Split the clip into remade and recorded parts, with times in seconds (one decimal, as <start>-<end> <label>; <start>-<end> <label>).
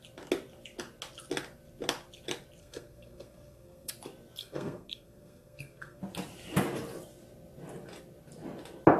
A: 0.0-2.6 recorded; 2.6-3.9 remade; 3.9-4.4 recorded; 4.4-6.0 remade; 6.0-9.0 recorded